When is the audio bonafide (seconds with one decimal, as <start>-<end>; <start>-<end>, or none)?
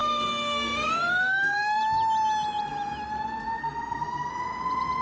1.8-3.6; 4.3-5.0